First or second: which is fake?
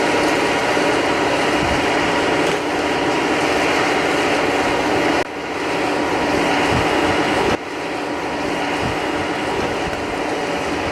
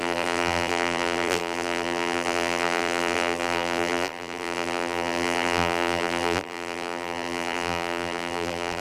second